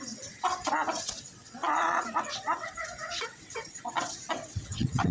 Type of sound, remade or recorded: remade